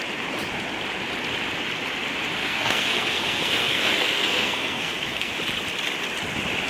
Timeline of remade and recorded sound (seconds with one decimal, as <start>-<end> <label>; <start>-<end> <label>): 0.0-2.4 recorded; 2.4-5.3 remade; 5.3-6.7 recorded

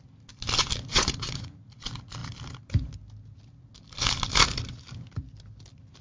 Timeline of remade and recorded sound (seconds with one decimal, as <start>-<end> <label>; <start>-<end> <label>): 0.0-0.9 recorded; 0.9-1.6 remade; 1.6-6.0 recorded

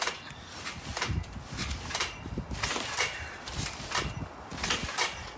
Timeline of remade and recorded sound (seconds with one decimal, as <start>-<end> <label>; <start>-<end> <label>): 0.0-0.9 recorded; 0.9-3.5 remade; 3.5-5.4 recorded